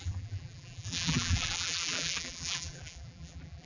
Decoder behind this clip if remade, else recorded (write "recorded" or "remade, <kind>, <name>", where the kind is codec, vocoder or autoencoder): remade, vocoder, BigVGAN v2